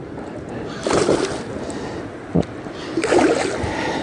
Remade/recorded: recorded